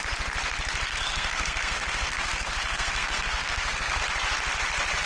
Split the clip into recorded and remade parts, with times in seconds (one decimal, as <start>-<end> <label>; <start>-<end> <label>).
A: 0.0-0.9 recorded; 0.9-4.0 remade; 4.0-5.1 recorded